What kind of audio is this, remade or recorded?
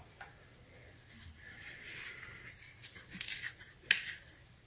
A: recorded